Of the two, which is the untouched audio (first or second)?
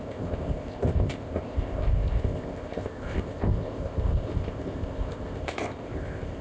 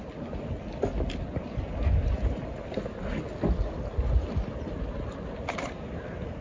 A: second